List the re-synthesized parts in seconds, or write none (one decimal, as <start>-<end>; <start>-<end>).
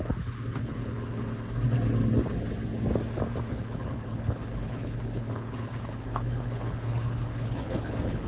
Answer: 0.0-1.2; 3.5-8.3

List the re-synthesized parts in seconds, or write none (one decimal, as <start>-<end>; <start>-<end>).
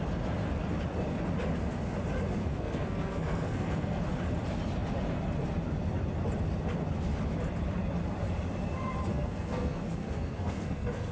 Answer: 2.4-4.0; 9.1-11.1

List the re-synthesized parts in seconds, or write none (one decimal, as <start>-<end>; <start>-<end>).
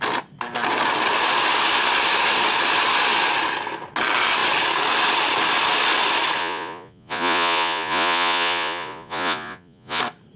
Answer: 6.4-10.0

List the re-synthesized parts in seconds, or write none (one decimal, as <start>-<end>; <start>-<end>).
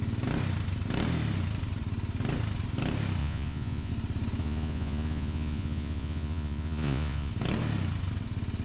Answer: 3.2-3.9; 4.4-7.3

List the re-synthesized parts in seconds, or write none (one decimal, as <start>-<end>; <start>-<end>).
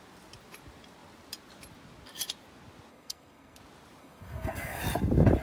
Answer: 2.9-3.6; 4.0-4.8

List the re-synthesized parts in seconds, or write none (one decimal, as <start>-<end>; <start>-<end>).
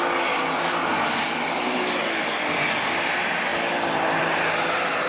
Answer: none